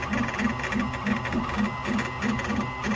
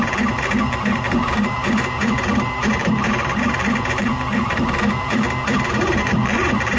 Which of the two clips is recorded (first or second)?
first